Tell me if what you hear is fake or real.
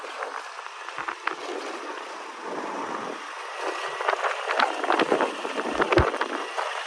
real